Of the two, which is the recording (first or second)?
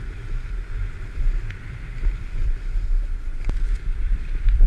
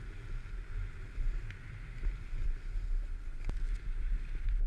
second